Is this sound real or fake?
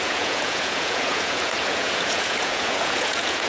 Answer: fake